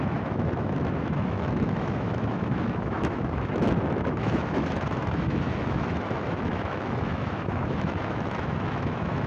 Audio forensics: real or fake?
fake